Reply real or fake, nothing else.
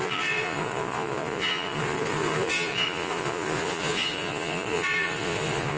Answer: fake